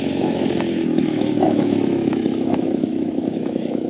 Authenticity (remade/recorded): remade